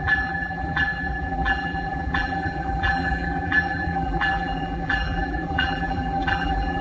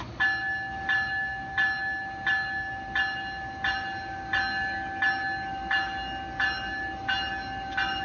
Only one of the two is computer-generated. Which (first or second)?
first